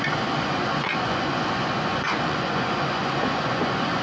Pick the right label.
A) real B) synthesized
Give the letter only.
B